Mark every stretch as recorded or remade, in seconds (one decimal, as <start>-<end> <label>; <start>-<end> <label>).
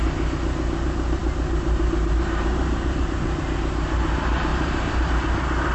0.0-4.5 recorded; 4.5-5.1 remade; 5.1-5.7 recorded